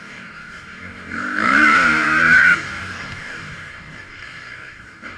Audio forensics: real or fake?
fake